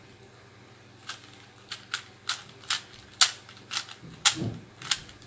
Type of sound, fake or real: real